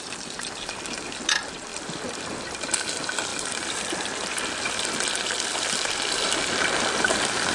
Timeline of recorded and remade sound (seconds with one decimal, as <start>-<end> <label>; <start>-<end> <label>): 0.0-7.5 recorded